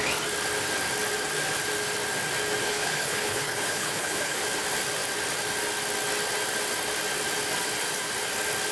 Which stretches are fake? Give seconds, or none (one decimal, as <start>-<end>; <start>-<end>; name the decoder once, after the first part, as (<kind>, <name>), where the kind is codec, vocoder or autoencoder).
2.6-4.4 (codec, HILCodec)